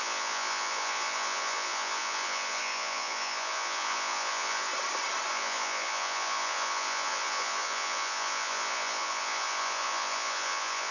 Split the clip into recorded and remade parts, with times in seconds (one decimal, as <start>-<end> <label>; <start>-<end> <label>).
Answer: 0.0-4.7 remade; 4.7-5.3 recorded; 5.3-10.9 remade